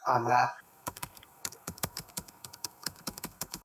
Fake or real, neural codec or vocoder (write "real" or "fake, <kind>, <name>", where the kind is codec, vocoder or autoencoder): fake, codec, SNAC